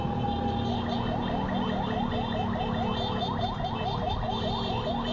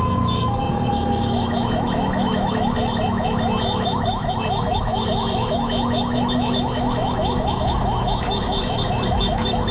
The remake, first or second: second